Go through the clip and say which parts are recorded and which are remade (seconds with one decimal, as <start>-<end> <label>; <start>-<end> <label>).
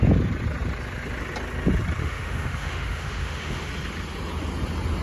0.0-2.0 recorded; 2.0-3.7 remade; 3.7-5.0 recorded